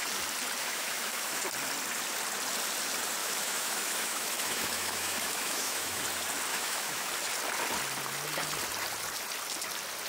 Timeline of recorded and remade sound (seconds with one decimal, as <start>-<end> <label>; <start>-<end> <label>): 0.0-0.6 recorded; 0.6-1.4 remade; 1.4-3.2 recorded; 3.2-6.0 remade; 6.0-6.5 recorded; 6.5-7.1 remade; 7.1-10.1 recorded